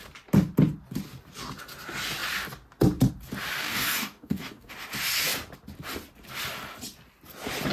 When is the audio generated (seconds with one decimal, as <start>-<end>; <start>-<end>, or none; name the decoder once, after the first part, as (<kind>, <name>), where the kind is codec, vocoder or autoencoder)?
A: 3.6-4.7 (codec, DAC)